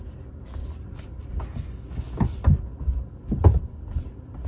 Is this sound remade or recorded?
recorded